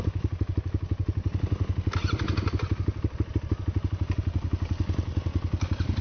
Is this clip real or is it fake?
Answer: real